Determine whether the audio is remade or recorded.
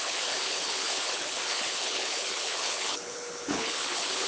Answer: remade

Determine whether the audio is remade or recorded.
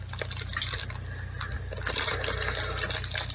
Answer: recorded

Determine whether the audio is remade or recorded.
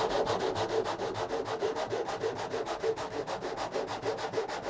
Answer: recorded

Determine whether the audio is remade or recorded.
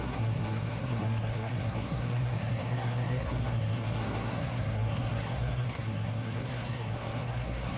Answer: remade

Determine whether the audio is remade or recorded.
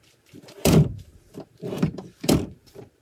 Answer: remade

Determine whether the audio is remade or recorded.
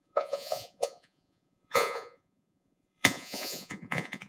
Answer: remade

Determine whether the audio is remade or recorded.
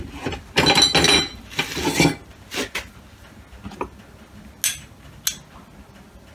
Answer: recorded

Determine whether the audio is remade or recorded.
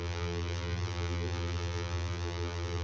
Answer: remade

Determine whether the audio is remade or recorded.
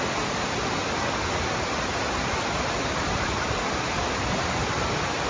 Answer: recorded